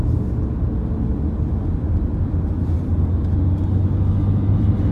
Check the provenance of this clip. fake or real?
real